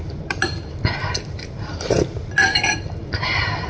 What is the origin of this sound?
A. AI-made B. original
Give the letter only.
B